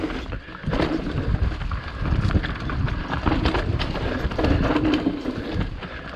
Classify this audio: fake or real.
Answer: real